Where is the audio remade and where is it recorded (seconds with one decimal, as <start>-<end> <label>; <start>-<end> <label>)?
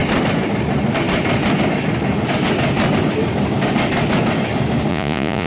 0.0-4.9 recorded; 4.9-5.5 remade